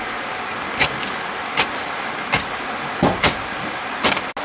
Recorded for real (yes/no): yes